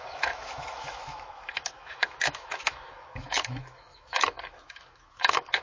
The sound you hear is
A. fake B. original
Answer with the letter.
A